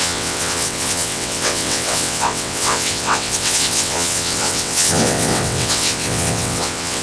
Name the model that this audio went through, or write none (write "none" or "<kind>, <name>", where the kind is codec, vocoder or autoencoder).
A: vocoder, WaveNeXt